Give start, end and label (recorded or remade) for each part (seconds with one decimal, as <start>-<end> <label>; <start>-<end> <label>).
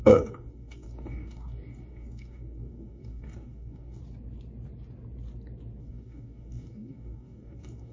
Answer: 0.0-4.0 remade; 4.0-5.8 recorded; 5.8-7.9 remade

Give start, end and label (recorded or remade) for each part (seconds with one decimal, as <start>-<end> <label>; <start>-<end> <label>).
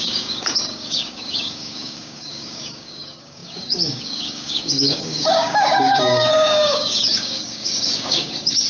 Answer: 0.0-8.7 remade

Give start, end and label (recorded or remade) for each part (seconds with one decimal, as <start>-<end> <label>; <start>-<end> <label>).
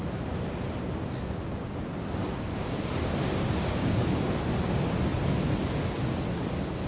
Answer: 0.0-2.2 recorded; 2.2-2.8 remade; 2.8-3.4 recorded; 3.4-4.3 remade; 4.3-6.9 recorded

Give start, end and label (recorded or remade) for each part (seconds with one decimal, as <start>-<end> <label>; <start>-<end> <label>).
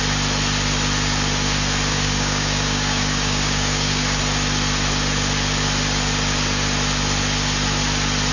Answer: 0.0-1.9 recorded; 1.9-4.2 remade; 4.2-8.3 recorded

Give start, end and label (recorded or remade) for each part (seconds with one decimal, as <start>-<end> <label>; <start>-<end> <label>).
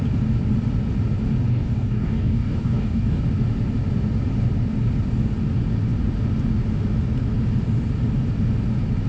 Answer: 0.0-1.5 recorded; 1.5-3.2 remade; 3.2-9.1 recorded